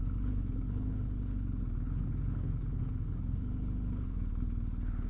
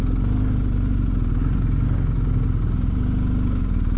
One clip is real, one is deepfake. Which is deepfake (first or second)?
first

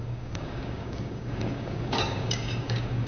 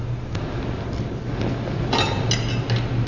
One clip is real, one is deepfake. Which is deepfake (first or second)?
first